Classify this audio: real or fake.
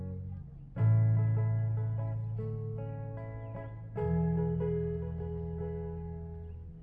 real